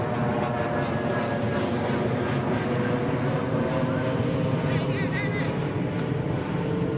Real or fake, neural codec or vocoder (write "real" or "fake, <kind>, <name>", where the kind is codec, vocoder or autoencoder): real